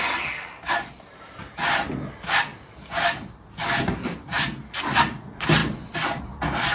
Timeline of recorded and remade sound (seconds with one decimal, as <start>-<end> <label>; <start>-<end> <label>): 0.0-6.7 recorded